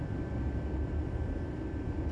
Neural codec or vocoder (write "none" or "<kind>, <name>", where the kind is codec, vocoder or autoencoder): none